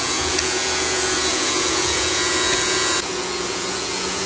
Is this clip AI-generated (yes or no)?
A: yes